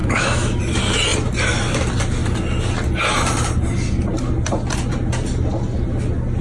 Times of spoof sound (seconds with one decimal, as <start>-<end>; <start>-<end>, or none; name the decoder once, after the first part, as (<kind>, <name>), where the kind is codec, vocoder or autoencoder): 0.0-0.6 (autoencoder, DAC-VAE)